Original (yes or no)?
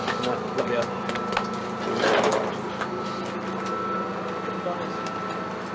yes